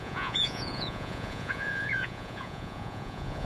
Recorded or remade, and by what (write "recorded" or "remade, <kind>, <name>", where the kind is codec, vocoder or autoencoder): remade, vocoder, Vocos